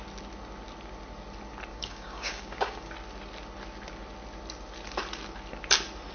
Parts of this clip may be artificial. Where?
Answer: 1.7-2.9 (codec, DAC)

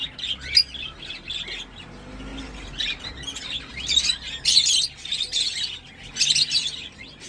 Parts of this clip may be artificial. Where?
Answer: none

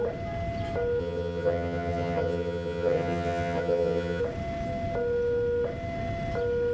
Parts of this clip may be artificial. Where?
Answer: 1.0-4.2 (vocoder, HiFi-GAN)

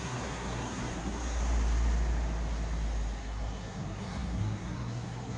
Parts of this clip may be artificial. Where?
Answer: 0.0-1.4 (codec, SNAC); 3.2-5.4